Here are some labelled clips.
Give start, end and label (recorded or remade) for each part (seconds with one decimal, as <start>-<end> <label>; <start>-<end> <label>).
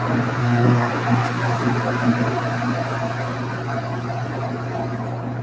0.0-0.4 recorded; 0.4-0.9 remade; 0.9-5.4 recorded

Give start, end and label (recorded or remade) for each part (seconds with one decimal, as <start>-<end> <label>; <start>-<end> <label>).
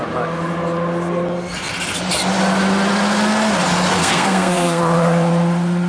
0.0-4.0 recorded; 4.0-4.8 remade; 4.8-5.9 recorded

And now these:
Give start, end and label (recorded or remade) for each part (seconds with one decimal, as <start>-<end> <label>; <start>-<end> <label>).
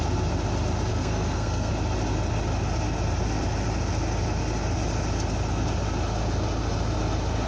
0.0-0.9 recorded; 0.9-1.7 remade; 1.7-7.5 recorded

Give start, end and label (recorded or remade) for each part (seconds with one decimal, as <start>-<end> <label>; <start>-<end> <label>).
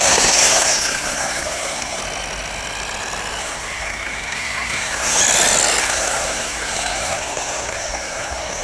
0.0-2.0 remade; 2.0-3.4 recorded; 3.4-5.2 remade; 5.2-5.8 recorded; 5.8-8.6 remade